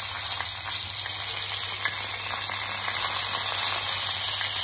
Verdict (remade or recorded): recorded